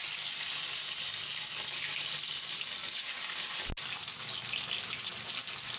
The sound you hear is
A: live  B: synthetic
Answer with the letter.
A